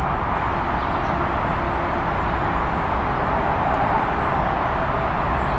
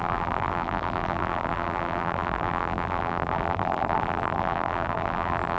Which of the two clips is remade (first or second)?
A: second